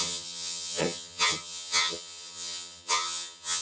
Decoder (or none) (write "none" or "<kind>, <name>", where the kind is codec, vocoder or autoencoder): vocoder, HiFi-GAN